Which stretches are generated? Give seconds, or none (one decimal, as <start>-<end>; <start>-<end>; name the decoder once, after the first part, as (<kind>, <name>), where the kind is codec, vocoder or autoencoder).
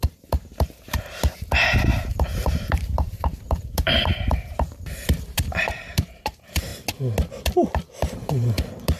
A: 0.0-6.7 (vocoder, BigVGAN v2); 8.1-9.0